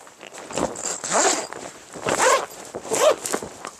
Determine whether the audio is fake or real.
real